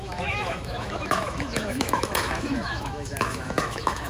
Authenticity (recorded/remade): remade